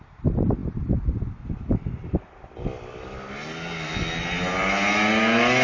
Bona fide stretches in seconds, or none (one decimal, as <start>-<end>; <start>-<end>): 0.0-5.6